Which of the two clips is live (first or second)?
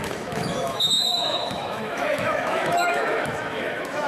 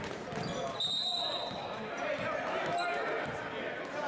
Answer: second